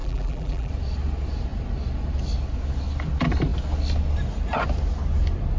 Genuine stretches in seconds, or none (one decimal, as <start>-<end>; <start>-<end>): 0.7-5.6